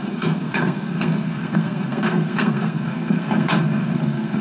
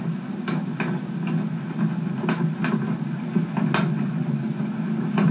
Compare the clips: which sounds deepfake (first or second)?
first